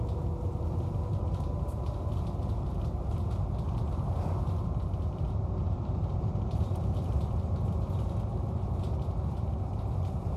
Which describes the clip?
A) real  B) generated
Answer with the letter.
B